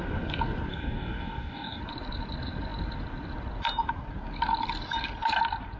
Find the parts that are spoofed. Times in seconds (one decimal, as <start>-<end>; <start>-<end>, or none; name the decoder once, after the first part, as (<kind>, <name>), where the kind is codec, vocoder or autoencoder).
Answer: 0.7-1.8 (codec, DAC)